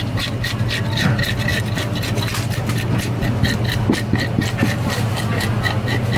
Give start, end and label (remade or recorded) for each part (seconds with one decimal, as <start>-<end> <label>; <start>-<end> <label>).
0.0-6.2 recorded